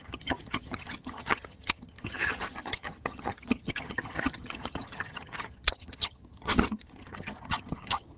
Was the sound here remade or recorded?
remade